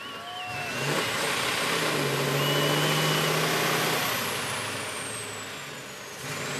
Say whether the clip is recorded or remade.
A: recorded